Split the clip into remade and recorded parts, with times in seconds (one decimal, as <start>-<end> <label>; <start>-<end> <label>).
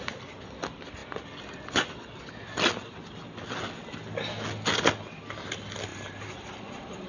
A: 0.0-5.9 recorded; 5.9-7.1 remade